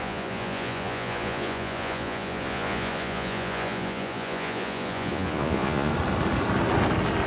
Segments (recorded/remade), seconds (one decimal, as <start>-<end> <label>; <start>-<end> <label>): 0.0-5.9 remade; 5.9-7.3 recorded